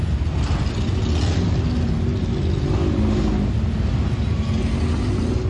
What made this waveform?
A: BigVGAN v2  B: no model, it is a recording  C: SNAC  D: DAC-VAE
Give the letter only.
B